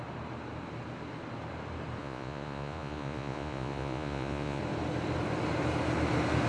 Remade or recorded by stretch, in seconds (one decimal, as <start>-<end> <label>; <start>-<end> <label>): 0.0-2.0 recorded; 2.0-4.6 remade; 4.6-6.5 recorded